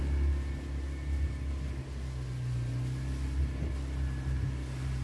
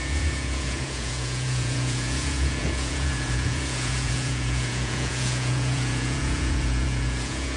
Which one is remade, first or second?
second